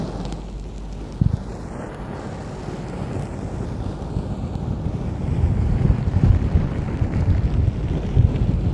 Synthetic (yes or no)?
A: no